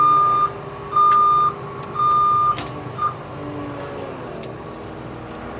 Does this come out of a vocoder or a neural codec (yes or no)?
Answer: no